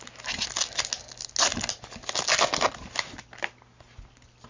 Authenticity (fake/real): real